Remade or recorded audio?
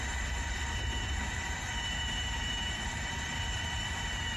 remade